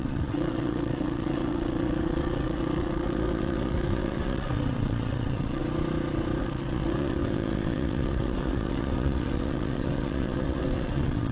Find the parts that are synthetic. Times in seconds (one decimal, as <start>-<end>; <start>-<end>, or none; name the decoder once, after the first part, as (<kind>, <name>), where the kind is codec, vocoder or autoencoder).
0.0-5.6 (vocoder, WaveNeXt); 6.4-11.3